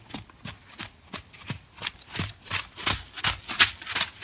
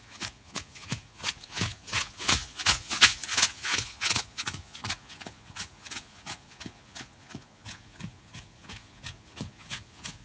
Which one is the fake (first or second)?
second